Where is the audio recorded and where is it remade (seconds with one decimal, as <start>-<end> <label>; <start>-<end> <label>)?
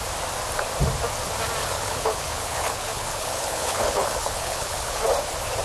0.0-1.6 recorded; 1.6-5.0 remade; 5.0-5.6 recorded